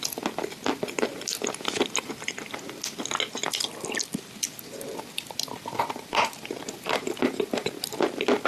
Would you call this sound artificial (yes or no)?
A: no